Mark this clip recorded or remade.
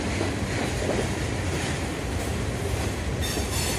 recorded